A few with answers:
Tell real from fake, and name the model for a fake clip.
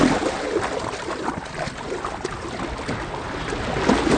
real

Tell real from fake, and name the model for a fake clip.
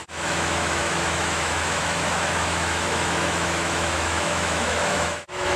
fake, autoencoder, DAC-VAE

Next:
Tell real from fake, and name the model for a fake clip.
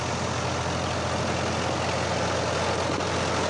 real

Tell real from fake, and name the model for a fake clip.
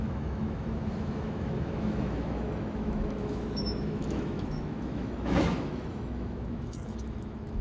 fake, autoencoder, DAC-VAE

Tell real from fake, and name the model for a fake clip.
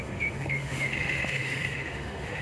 fake, autoencoder, DAC-VAE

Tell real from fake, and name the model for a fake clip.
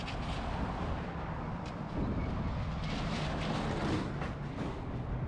real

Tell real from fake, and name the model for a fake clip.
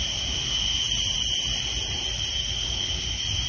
real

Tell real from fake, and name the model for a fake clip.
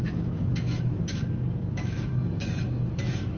fake, autoencoder, DAC-VAE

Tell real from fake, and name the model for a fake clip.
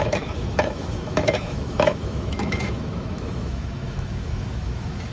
fake, autoencoder, DAC-VAE